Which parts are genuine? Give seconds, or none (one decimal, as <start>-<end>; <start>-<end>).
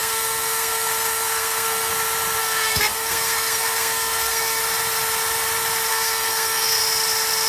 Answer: 1.9-2.4; 4.6-5.9; 6.8-7.5